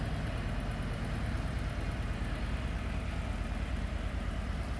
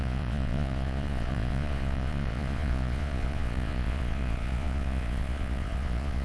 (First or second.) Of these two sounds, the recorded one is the first